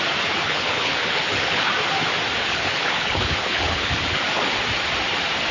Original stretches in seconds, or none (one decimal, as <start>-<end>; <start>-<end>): 0.0-0.4; 1.7-2.4; 4.2-5.5